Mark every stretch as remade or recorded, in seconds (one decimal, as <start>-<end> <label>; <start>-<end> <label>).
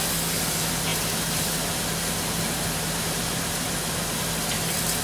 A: 0.0-0.9 recorded; 0.9-3.6 remade; 3.6-5.0 recorded